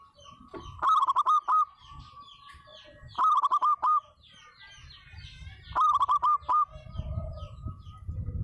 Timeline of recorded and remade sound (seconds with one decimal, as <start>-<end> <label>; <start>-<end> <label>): 0.0-8.4 recorded